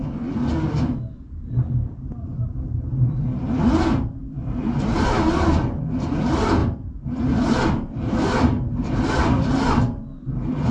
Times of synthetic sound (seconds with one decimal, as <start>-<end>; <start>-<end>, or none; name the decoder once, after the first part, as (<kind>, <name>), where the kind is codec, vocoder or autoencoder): 6.6-7.2 (vocoder, BigVGAN v2)